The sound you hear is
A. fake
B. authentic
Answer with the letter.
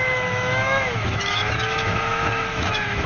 A